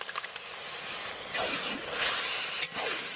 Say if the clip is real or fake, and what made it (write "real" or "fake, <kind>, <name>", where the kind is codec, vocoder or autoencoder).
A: real